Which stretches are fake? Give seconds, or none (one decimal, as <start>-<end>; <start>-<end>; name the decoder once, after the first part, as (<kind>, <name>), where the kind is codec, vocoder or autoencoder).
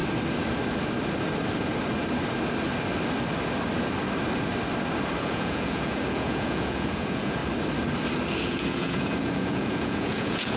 5.2-7.4 (vocoder, Vocos); 8.3-10.6